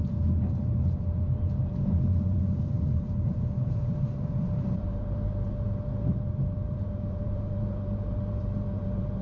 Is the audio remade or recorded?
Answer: remade